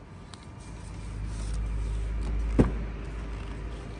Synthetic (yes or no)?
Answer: no